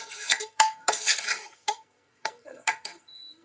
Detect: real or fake fake